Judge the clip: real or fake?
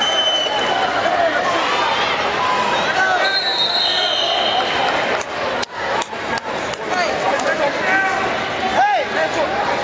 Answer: real